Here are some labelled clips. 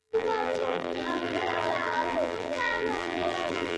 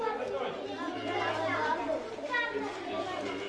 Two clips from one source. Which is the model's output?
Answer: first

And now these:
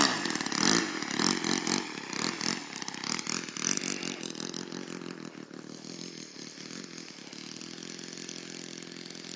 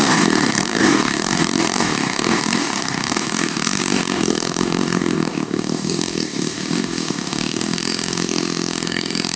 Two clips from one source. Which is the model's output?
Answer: second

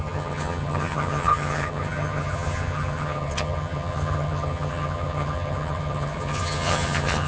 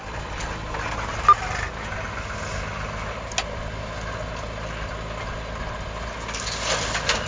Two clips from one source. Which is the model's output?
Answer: first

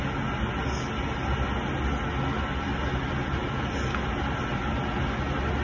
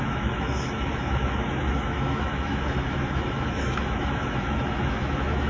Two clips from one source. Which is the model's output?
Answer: second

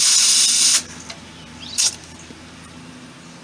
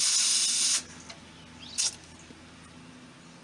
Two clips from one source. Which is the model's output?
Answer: first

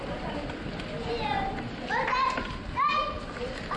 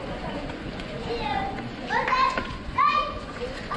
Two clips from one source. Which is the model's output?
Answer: second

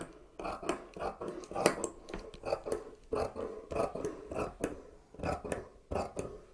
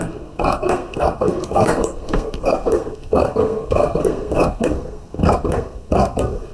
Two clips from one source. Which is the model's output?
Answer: second